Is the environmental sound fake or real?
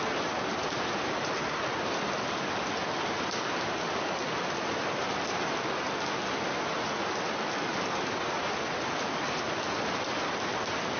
real